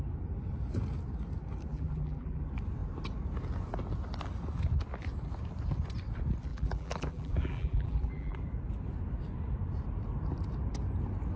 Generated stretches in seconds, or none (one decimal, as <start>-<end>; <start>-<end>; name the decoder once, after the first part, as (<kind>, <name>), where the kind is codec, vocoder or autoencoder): 1.7-2.4 (vocoder, BigVGAN v2); 6.5-8.4